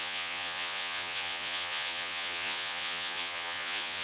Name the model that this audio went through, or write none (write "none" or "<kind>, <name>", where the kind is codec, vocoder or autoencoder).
vocoder, Vocos